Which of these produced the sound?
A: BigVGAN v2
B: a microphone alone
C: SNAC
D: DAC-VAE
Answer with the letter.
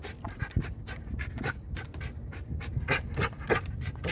B